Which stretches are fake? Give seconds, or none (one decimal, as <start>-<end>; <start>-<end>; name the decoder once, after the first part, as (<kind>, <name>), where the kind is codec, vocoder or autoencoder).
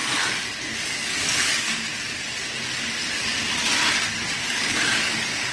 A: 0.9-1.9 (codec, DAC); 4.5-5.5